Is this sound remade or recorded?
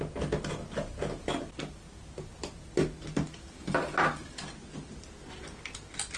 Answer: recorded